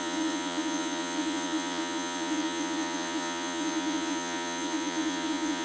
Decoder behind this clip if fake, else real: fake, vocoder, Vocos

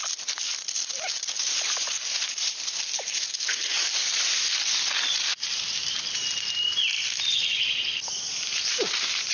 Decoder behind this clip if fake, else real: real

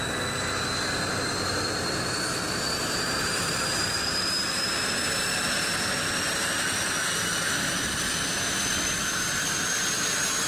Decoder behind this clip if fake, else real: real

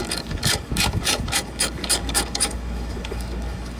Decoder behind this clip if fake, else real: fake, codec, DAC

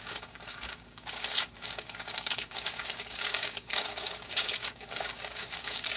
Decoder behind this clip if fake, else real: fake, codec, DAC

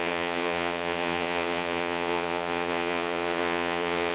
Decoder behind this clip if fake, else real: fake, vocoder, Vocos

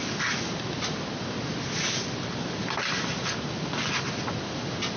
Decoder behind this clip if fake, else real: real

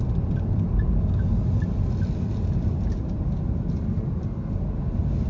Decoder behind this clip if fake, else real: real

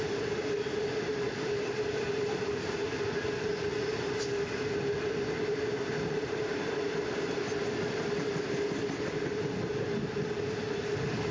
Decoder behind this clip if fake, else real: real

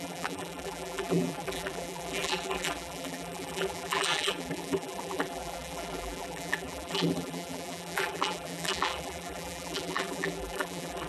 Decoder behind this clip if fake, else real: fake, vocoder, BigVGAN v2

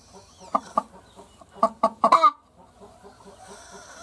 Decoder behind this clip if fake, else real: real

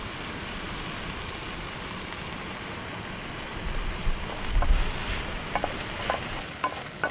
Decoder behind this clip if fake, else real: real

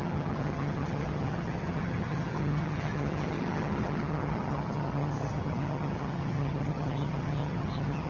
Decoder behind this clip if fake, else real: fake, vocoder, HiFi-GAN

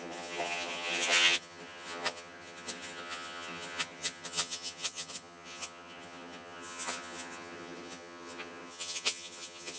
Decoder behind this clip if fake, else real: fake, vocoder, HiFi-GAN